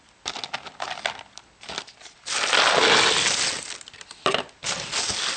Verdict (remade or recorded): recorded